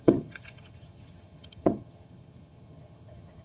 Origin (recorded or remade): remade